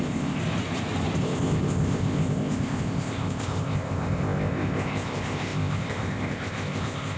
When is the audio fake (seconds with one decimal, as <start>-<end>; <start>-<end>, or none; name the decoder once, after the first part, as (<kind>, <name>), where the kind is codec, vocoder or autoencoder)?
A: 0.0-0.4 (codec, ZipCodec); 1.2-7.2